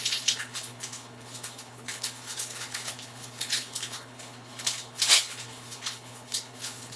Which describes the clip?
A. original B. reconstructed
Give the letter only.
B